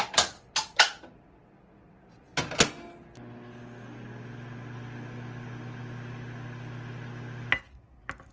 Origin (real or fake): real